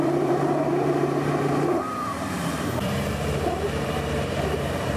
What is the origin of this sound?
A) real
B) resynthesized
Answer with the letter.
B